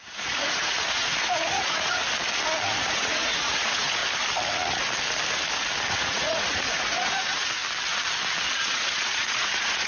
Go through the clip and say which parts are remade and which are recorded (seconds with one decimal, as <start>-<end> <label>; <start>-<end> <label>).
0.0-2.0 remade; 2.0-2.8 recorded; 2.8-4.0 remade; 4.0-5.9 recorded; 5.9-7.6 remade; 7.6-8.5 recorded; 8.5-9.9 remade